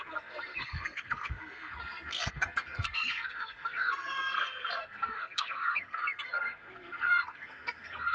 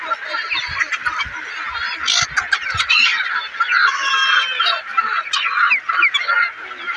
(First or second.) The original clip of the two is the second